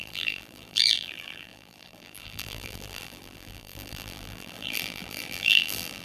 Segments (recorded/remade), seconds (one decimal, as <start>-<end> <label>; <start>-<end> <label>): 0.0-6.0 remade